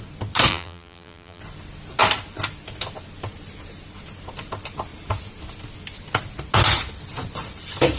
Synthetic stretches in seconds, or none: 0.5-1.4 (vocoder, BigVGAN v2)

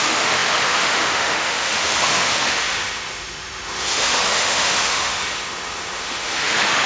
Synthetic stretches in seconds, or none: 0.0-6.9 (autoencoder, DAC-VAE)